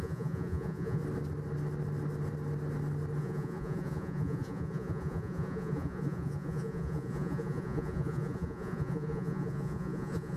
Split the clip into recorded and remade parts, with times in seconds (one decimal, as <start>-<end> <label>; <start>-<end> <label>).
0.0-1.0 remade; 1.0-3.2 recorded; 3.2-10.4 remade